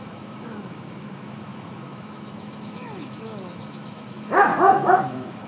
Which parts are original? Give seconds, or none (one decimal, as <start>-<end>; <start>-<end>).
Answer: 4.5-5.0